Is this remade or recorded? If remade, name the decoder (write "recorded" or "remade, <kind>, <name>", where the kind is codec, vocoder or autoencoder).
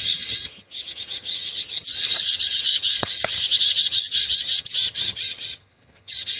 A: remade, vocoder, HiFi-GAN